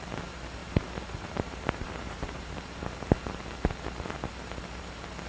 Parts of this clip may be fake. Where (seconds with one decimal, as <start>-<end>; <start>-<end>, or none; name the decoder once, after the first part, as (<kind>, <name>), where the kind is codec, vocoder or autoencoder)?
0.6-2.8 (vocoder, BigVGAN v2)

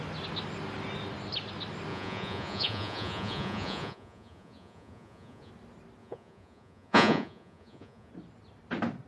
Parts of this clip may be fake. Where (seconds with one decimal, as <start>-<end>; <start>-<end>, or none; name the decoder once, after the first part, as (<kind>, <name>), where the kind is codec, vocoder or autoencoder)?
1.9-5.5 (vocoder, Vocos); 6.0-8.1

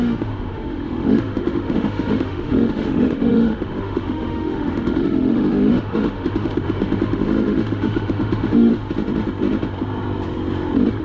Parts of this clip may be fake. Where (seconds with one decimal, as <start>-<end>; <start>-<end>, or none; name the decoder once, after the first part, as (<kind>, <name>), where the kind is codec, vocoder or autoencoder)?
0.0-8.7 (autoencoder, DAC-VAE)

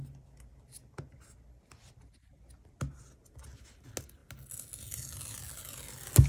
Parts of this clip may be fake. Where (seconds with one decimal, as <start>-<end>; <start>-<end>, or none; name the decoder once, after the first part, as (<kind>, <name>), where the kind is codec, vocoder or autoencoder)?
0.5-1.0 (vocoder, BigVGAN v2)